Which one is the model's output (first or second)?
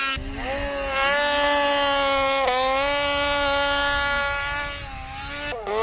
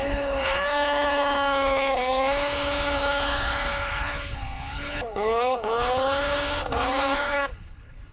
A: second